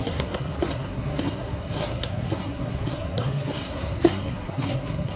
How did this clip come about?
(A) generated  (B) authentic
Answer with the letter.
A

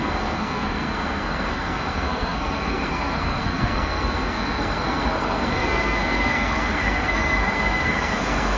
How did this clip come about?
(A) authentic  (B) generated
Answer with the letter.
B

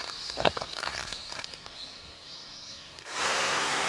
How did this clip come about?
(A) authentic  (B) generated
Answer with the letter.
B